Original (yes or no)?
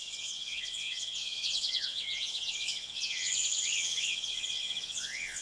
no